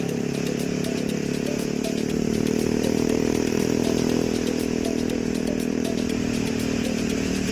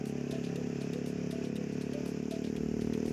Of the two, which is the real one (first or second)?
second